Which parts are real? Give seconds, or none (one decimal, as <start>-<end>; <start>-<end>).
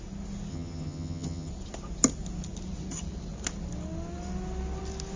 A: 0.0-0.5; 1.5-5.2